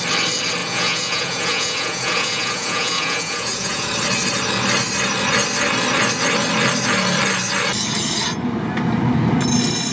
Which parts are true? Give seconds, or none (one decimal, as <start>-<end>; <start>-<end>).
0.0-0.6; 3.9-9.9